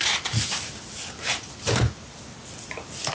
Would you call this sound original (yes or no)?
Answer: yes